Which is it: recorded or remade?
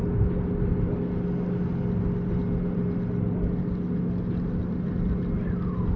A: recorded